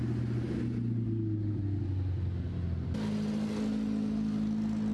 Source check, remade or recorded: recorded